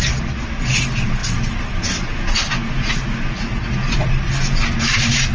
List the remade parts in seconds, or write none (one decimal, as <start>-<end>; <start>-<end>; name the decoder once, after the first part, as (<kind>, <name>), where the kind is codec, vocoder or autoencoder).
none